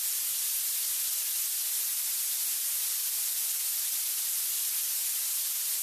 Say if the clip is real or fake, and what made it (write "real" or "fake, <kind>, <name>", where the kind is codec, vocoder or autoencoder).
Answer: real